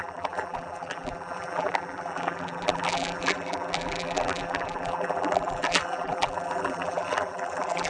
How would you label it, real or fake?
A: fake